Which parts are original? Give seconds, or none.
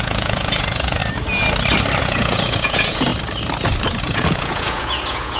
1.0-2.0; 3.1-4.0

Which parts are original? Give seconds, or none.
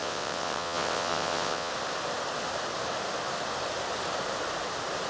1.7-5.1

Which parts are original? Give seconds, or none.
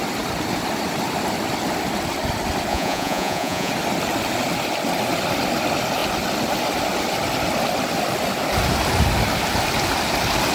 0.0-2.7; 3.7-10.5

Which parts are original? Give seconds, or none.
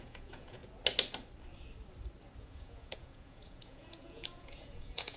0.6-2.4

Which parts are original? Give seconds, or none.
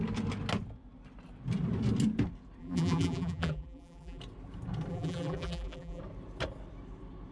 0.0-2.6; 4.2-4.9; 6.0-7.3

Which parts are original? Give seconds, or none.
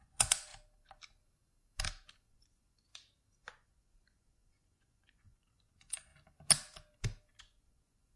0.5-2.3; 2.9-3.5; 6.1-7.4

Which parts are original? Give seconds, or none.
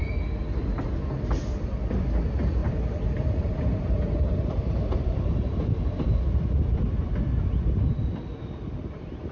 0.0-2.6; 6.1-9.3